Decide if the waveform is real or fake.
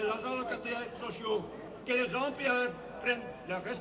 fake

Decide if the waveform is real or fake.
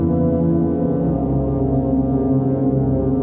real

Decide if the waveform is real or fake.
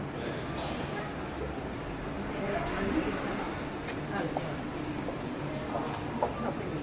real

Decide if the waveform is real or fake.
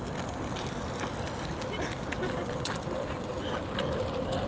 real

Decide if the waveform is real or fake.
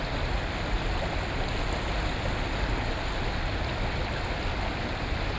real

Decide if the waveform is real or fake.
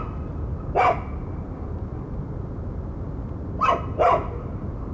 real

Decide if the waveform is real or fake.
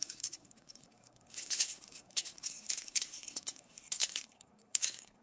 fake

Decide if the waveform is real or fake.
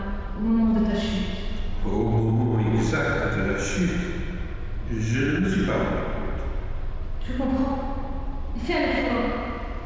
real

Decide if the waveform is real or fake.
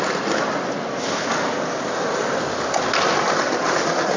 real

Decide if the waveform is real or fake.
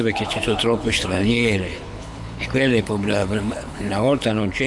fake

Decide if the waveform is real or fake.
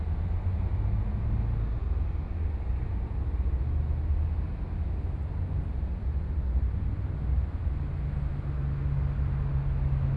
real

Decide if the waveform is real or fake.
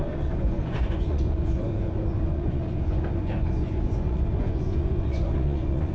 fake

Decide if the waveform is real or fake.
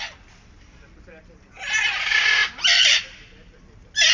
real